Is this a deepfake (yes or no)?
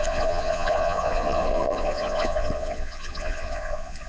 yes